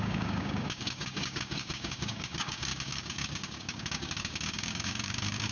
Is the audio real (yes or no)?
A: no